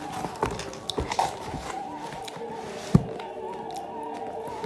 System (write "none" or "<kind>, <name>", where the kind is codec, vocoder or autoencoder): none